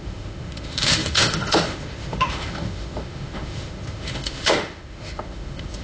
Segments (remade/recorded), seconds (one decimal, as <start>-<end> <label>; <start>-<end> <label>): 0.0-5.8 remade

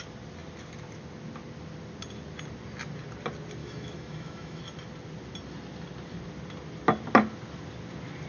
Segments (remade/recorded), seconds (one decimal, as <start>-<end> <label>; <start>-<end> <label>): 0.0-3.6 recorded; 3.6-4.6 remade; 4.6-8.3 recorded